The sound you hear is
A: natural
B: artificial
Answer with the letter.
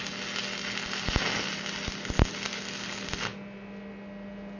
A